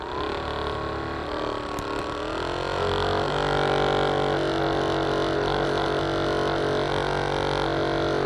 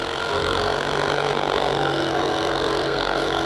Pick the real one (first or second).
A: first